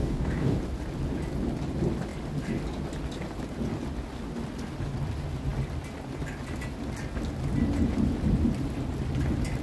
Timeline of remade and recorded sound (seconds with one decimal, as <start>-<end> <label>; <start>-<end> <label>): 0.0-0.6 remade; 0.6-9.6 recorded